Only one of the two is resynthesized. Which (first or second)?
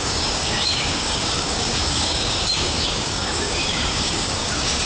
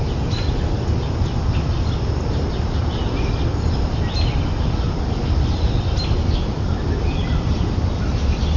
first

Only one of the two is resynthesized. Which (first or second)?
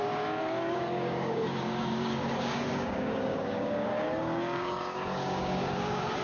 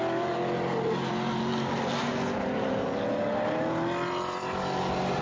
first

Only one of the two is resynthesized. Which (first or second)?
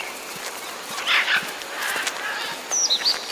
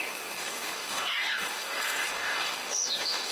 second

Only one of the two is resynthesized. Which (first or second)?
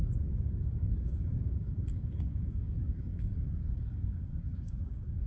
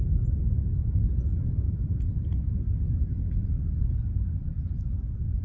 first